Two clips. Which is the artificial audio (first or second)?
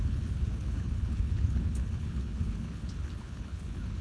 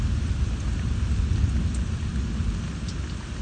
first